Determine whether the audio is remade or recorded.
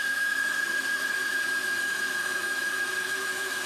remade